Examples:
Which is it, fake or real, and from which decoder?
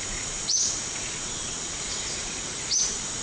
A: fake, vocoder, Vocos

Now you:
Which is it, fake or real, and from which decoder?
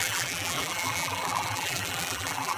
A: fake, vocoder, BigVGAN v2